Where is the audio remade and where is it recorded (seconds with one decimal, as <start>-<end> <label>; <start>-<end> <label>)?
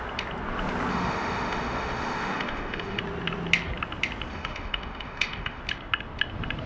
0.0-0.9 recorded; 0.9-3.0 remade; 3.0-4.3 recorded; 4.3-5.6 remade; 5.6-6.7 recorded